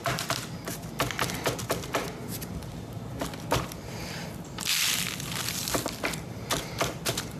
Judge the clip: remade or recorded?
recorded